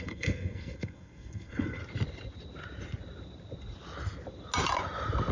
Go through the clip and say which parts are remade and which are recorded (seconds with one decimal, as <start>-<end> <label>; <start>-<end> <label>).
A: 0.0-1.8 remade; 1.8-5.3 recorded